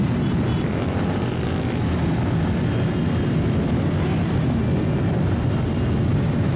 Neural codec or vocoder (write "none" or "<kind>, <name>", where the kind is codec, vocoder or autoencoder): none